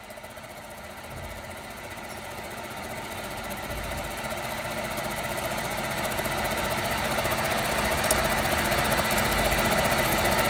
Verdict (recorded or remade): recorded